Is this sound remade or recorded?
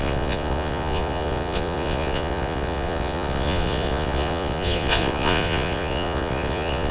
remade